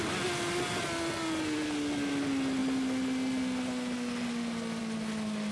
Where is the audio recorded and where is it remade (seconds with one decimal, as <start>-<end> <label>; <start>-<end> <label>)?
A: 0.0-5.5 recorded

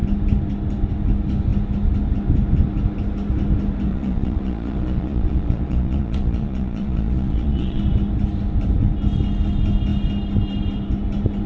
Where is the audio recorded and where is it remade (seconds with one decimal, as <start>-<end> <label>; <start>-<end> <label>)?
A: 0.0-3.9 recorded; 3.9-7.8 remade; 7.8-11.5 recorded

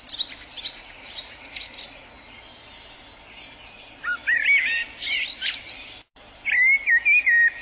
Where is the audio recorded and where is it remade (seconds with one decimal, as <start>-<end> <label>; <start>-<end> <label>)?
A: 0.0-0.6 recorded; 0.6-2.4 remade; 2.4-7.6 recorded

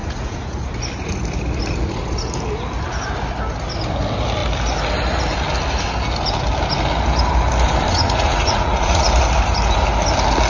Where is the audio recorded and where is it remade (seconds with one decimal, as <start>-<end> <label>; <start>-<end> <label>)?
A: 0.0-0.7 remade; 0.7-7.9 recorded; 7.9-9.0 remade; 9.0-10.5 recorded

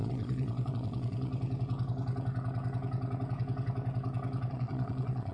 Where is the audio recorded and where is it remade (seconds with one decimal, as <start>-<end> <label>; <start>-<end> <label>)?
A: 0.0-1.3 remade; 1.3-4.5 recorded; 4.5-5.3 remade

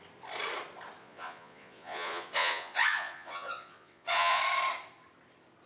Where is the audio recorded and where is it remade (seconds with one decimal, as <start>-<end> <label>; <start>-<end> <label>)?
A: 0.0-1.0 recorded; 1.0-4.4 remade; 4.4-5.7 recorded